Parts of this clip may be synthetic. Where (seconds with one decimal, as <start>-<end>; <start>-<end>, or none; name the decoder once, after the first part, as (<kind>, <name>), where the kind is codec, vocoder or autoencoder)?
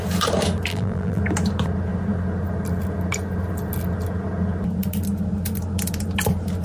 0.7-1.2 (vocoder, BigVGAN v2)